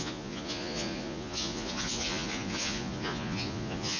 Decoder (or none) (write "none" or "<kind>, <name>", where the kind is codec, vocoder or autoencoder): vocoder, Vocos